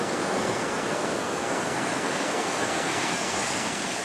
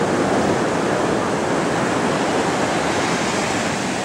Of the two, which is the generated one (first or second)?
first